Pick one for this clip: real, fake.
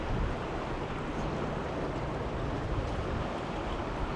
real